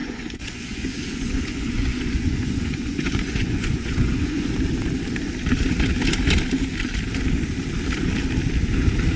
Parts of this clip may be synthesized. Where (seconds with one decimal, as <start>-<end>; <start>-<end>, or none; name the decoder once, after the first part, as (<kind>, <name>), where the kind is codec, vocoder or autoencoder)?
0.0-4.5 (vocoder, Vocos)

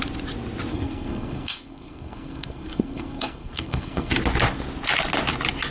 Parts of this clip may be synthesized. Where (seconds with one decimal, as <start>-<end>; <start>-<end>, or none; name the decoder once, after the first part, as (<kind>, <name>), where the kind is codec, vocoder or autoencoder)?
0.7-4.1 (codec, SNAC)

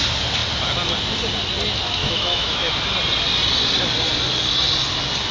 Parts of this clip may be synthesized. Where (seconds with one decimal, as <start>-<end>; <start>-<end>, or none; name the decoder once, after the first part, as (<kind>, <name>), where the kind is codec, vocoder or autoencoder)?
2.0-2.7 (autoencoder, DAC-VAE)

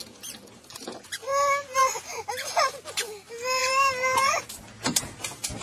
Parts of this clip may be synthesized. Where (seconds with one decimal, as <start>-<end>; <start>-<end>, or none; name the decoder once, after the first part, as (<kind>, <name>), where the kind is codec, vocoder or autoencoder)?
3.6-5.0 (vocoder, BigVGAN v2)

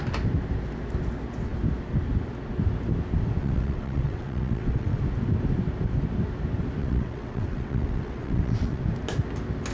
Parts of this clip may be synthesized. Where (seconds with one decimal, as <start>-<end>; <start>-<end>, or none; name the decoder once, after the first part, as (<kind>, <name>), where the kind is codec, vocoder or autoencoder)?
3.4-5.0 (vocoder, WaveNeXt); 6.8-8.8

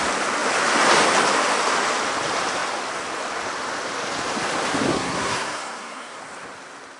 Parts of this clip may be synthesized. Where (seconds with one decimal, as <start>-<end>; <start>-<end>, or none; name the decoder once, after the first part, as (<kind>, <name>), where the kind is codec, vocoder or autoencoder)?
4.9-6.2 (codec, SNAC)

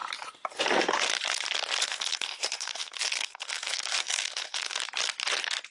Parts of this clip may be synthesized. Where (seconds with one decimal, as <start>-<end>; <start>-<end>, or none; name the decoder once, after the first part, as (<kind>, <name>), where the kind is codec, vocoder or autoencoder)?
1.8-4.8 (codec, SNAC)

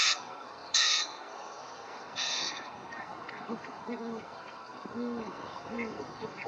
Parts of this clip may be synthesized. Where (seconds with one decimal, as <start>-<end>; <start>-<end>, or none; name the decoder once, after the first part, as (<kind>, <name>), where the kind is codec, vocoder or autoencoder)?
0.0-6.5 (codec, SNAC)